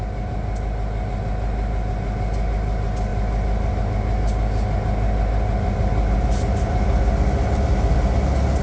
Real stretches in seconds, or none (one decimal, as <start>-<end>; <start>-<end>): 0.0-8.6

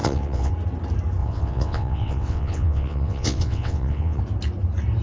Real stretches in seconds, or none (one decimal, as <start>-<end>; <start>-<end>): 0.5-1.2; 4.2-5.0

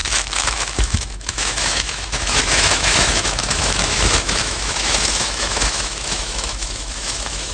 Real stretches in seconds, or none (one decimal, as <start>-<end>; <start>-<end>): none

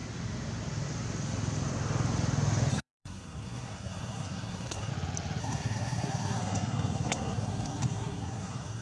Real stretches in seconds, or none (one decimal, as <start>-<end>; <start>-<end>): 0.0-2.7; 4.9-5.4

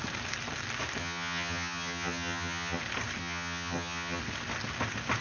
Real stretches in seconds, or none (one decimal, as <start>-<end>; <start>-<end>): 0.0-1.0; 2.8-3.2; 4.2-5.2

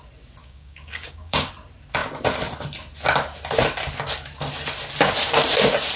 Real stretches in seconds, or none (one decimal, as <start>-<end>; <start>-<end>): 0.0-0.4; 1.5-6.0

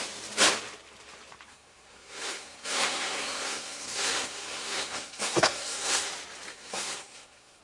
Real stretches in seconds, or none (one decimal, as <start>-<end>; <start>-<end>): 0.0-1.5; 6.1-6.5

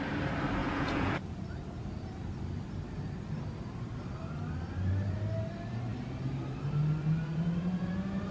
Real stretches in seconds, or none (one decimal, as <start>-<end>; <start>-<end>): 0.0-0.6; 1.4-8.3